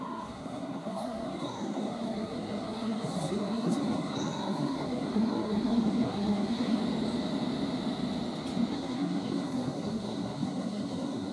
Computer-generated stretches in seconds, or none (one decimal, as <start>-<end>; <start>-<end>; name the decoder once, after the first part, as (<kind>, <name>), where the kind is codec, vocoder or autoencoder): 0.0-6.8 (codec, SNAC); 8.7-11.3